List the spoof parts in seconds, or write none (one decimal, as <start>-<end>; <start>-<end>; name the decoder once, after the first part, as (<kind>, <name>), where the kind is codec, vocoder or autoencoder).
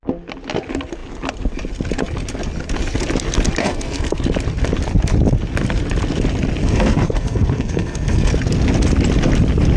3.6-4.2 (codec, SNAC); 6.6-8.3